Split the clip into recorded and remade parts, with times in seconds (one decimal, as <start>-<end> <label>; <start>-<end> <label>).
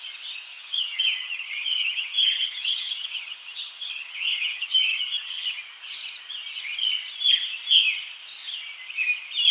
0.0-0.5 recorded; 0.5-5.6 remade; 5.6-9.5 recorded